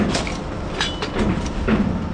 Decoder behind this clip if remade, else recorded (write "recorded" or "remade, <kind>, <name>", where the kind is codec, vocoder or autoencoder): recorded